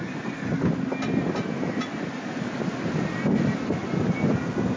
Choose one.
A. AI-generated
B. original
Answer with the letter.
B